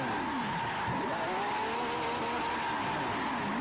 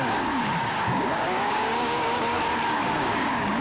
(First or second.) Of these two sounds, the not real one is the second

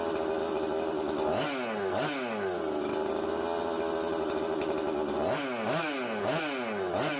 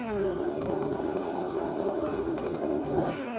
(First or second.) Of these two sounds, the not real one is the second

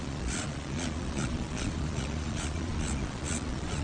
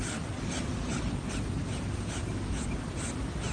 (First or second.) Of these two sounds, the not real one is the first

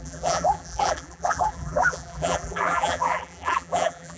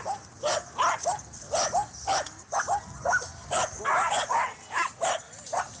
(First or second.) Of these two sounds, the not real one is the first